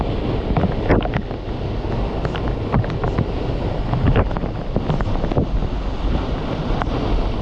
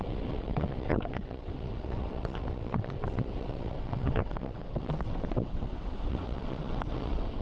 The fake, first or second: second